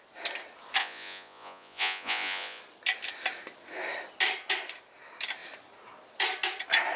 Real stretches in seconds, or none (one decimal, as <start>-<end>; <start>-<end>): 0.0-0.8; 2.6-7.0